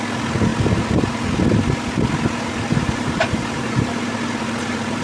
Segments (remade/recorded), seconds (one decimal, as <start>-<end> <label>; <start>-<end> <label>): 0.0-2.7 recorded; 2.7-4.2 remade; 4.2-5.0 recorded